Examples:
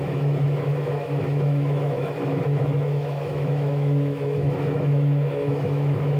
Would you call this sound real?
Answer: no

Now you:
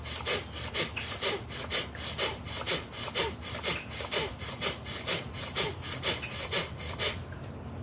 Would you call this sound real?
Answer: yes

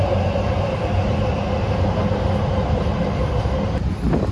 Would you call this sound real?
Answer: yes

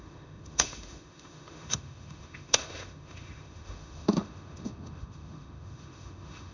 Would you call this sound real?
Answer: no